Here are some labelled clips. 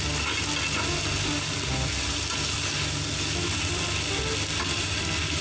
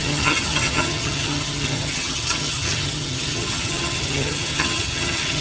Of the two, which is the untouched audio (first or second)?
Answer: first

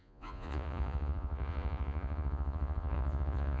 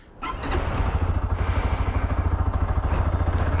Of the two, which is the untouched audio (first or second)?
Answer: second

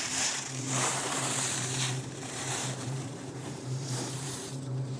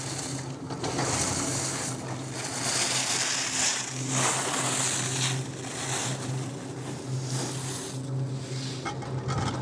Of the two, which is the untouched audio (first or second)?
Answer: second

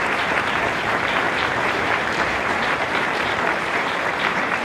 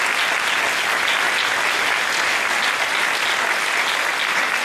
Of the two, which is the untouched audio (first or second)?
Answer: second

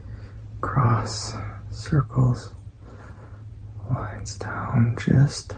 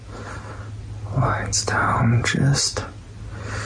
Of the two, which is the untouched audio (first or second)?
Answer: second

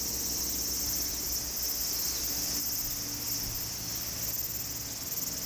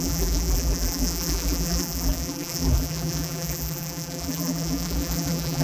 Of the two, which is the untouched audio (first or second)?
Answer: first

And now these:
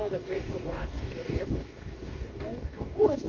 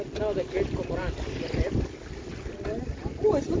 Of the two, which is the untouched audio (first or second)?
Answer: second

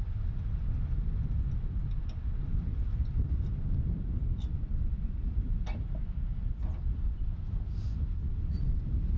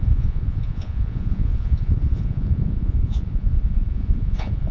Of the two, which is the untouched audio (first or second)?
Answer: first